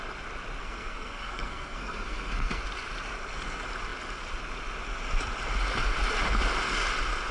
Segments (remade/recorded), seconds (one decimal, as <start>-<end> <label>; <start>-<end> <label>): 0.0-0.6 recorded; 0.6-2.6 remade; 2.6-7.3 recorded